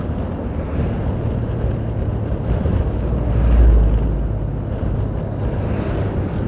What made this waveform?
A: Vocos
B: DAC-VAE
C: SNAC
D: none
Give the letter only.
D